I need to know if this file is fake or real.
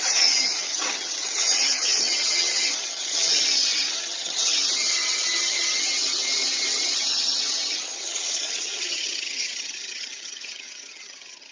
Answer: fake